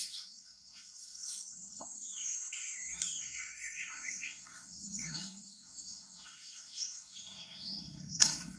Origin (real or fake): fake